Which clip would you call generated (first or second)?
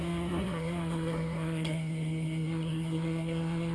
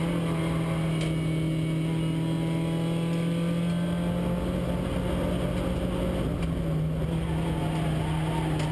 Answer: first